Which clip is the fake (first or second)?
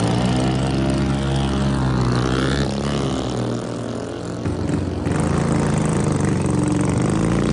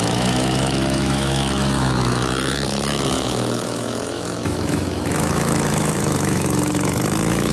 second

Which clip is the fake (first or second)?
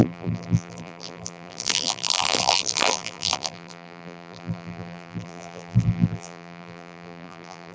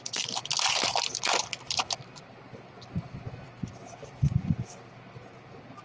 first